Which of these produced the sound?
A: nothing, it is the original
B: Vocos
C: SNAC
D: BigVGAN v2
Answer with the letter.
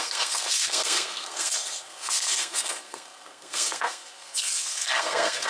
C